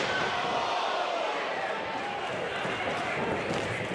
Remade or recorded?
recorded